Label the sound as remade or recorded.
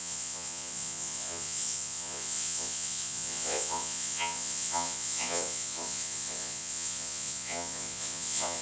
remade